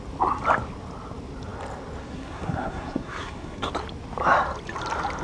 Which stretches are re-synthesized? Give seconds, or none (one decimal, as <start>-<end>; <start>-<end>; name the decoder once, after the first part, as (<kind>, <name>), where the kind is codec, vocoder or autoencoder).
2.0-3.7 (codec, SNAC)